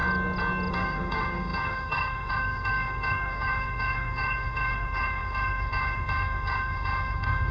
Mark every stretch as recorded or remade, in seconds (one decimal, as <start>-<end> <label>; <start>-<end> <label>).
0.0-0.7 recorded; 0.7-7.5 remade